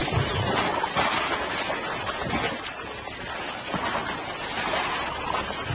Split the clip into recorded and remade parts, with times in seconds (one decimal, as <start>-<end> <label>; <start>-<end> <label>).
0.0-5.7 recorded